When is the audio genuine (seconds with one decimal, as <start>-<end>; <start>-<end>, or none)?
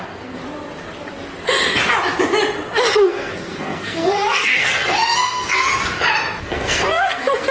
0.4-2.9; 5.7-6.4